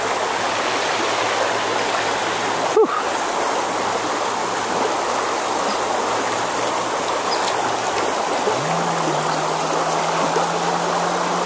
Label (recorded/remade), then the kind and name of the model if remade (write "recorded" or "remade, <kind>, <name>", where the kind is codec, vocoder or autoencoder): recorded